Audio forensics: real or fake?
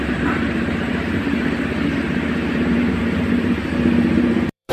fake